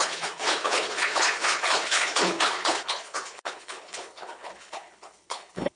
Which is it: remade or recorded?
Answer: remade